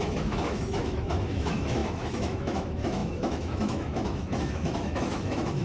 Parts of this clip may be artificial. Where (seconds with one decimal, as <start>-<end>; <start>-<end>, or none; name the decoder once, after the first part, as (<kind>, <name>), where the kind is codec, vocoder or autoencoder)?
0.0-5.6 (autoencoder, DAC-VAE)